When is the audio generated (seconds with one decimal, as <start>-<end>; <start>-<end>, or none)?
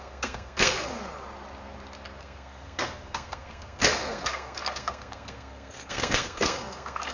0.0-1.0; 2.2-7.1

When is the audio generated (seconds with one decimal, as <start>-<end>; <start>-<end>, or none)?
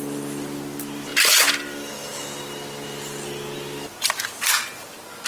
none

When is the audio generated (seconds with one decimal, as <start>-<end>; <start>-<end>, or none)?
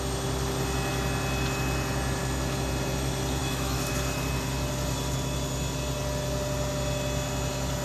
3.4-3.9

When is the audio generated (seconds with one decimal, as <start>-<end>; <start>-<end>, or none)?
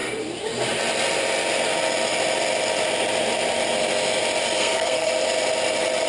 4.6-5.1